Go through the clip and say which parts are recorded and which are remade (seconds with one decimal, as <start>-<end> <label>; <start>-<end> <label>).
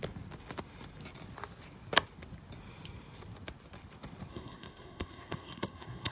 0.0-4.3 recorded; 4.3-6.1 remade